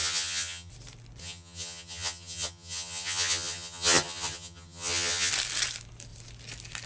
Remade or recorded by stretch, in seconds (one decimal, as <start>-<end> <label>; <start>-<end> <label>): 0.0-0.7 remade; 0.7-1.2 recorded; 1.2-5.3 remade; 5.3-6.9 recorded